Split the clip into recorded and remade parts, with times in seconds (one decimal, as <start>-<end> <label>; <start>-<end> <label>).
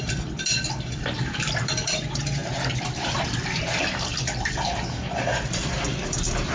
0.0-0.5 remade; 0.5-1.2 recorded; 1.2-2.4 remade; 2.4-3.0 recorded; 3.0-6.5 remade